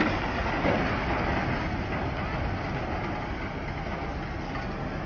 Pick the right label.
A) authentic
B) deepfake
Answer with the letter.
A